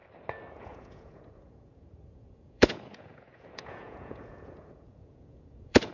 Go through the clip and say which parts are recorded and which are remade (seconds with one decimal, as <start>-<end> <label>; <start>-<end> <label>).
0.0-0.6 recorded; 0.6-5.9 remade